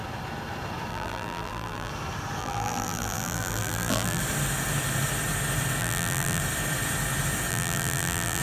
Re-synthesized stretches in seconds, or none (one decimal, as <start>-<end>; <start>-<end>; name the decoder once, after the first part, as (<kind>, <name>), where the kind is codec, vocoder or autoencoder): 0.9-1.9 (vocoder, BigVGAN v2); 2.4-4.2; 5.8-6.4; 7.5-8.4